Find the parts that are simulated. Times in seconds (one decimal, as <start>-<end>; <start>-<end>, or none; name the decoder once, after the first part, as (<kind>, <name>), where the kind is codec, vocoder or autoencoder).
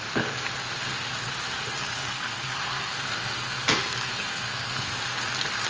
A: 1.8-4.9 (codec, SNAC)